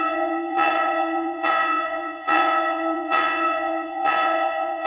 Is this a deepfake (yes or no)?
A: yes